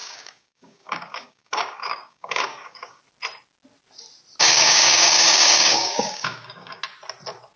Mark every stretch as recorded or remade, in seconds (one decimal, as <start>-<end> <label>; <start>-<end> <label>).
0.0-3.0 remade; 3.0-4.4 recorded; 4.4-6.8 remade; 6.8-7.6 recorded